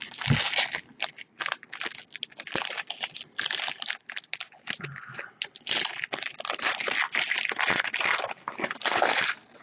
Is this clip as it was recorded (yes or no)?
yes